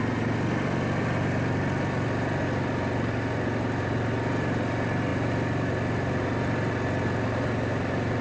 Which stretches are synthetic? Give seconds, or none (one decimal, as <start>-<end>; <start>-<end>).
none

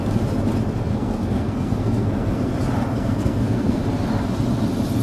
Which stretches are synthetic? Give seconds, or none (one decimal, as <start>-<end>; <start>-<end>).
0.9-2.5; 2.9-3.8

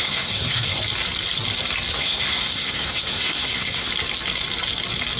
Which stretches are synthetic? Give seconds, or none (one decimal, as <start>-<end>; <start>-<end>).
0.0-0.8; 1.9-3.9

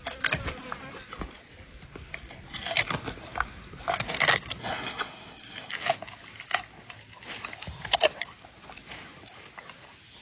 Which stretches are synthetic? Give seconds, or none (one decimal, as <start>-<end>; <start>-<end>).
4.6-5.7

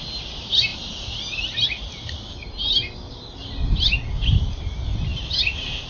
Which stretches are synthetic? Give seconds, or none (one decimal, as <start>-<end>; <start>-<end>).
none